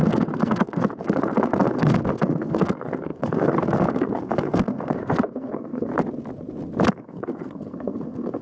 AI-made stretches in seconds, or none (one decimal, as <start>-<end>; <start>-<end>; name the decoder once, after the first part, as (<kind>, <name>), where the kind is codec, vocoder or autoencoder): 0.0-5.9 (codec, SNAC); 6.9-8.4

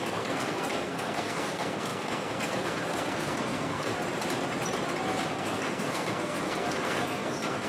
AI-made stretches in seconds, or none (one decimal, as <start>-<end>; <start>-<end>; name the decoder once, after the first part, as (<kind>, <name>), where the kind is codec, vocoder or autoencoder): 0.0-3.9 (codec, SNAC); 5.3-7.7